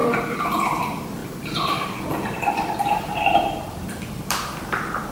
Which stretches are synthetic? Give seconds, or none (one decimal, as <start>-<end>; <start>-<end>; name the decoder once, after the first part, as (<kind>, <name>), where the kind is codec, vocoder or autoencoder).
0.0-5.1 (vocoder, BigVGAN v2)